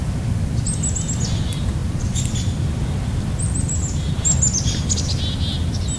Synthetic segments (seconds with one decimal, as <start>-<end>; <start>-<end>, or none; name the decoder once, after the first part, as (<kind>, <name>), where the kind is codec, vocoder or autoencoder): none